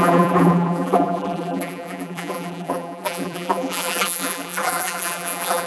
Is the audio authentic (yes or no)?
no